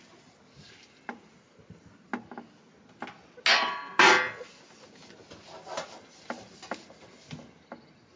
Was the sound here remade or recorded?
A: recorded